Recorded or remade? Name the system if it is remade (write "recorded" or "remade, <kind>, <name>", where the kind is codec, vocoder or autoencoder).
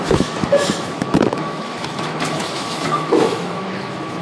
remade, autoencoder, DAC-VAE